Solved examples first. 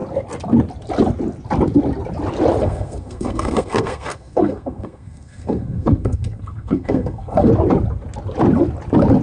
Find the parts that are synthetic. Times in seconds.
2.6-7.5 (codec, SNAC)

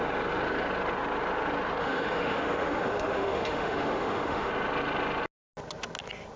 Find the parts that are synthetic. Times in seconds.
1.8-4.5 (autoencoder, DAC-VAE)

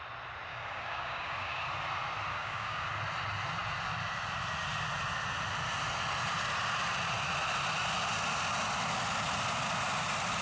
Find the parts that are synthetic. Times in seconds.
0.5-1.7 (codec, DAC); 2.3-2.9